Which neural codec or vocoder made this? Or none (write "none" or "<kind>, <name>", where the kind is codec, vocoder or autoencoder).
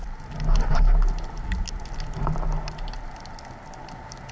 none